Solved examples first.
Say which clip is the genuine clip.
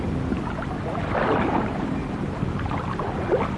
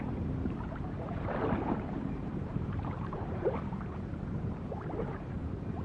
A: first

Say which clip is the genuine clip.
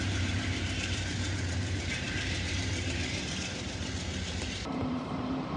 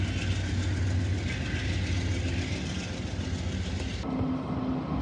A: second